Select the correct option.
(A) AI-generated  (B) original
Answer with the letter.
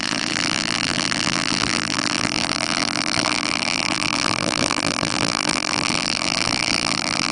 A